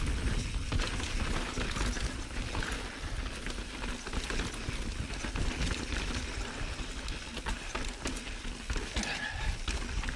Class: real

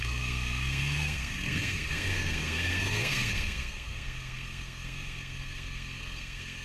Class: fake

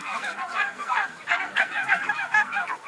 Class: fake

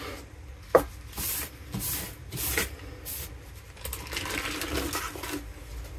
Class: real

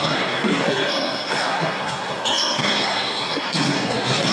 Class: fake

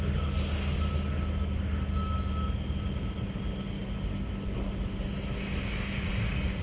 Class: real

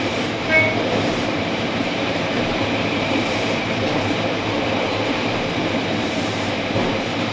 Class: fake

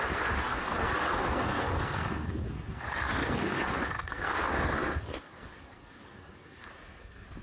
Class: fake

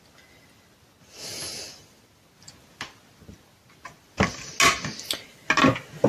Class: real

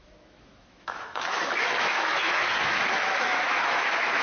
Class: fake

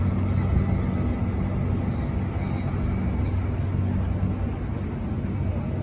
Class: real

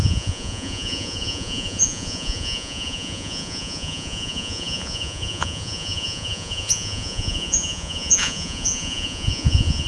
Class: fake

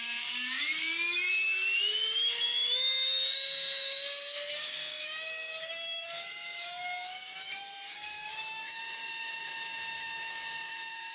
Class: fake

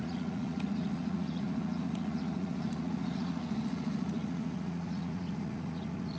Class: fake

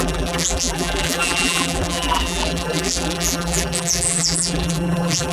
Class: fake